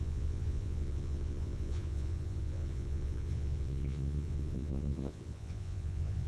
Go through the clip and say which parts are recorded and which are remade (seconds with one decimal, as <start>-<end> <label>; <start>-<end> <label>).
0.0-6.3 remade